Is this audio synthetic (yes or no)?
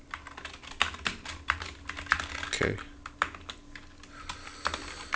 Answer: no